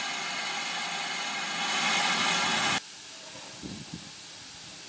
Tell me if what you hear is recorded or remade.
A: recorded